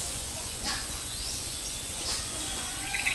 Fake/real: fake